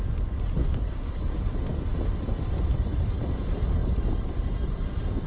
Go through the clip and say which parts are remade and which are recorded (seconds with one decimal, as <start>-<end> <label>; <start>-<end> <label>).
0.0-0.6 recorded; 0.6-1.6 remade; 1.6-5.3 recorded